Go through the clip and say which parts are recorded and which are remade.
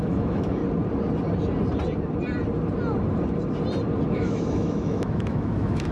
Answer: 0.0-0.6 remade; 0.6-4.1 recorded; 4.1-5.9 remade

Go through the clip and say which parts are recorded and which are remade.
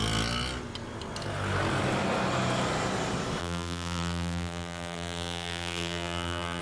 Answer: 0.0-3.4 recorded; 3.4-6.6 remade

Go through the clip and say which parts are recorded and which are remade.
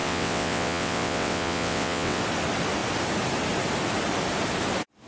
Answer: 0.0-2.2 remade; 2.2-5.1 recorded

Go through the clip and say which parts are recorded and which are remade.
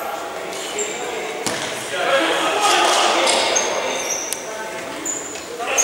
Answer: 0.0-2.1 recorded; 2.1-2.7 remade; 2.7-5.8 recorded